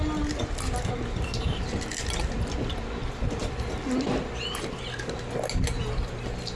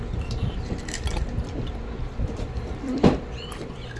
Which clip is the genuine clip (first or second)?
first